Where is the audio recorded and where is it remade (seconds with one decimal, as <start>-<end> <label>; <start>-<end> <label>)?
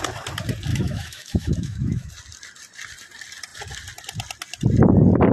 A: 0.0-0.7 recorded; 0.7-2.1 remade; 2.1-5.3 recorded